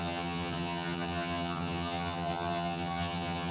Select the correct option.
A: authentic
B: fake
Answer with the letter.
B